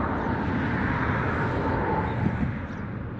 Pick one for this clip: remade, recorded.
recorded